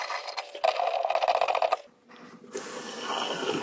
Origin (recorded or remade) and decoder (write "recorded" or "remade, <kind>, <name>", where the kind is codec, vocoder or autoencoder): recorded